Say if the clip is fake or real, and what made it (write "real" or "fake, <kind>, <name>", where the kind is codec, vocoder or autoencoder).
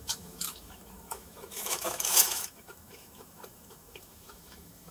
fake, autoencoder, DAC-VAE